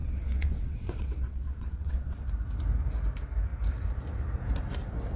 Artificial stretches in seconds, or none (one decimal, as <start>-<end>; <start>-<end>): 0.0-2.3